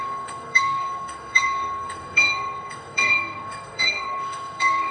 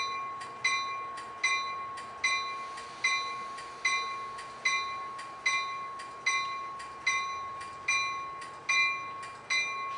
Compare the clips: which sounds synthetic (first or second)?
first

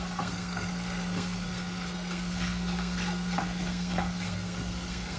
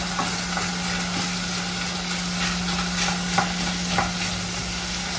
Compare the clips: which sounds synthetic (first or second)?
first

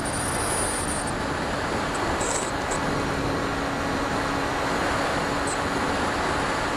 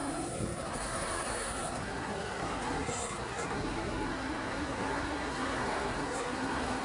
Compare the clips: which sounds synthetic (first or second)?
second